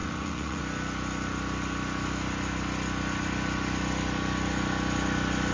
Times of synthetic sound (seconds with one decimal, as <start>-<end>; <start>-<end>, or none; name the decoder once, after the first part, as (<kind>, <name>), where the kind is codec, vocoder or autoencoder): 0.0-0.6 (vocoder, Vocos)